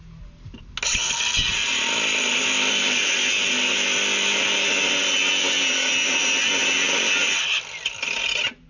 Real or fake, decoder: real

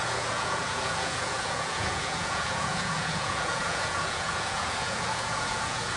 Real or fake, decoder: fake, vocoder, Vocos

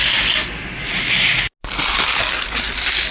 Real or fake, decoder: real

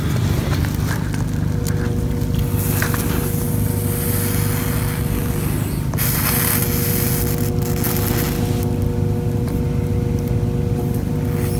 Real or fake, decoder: real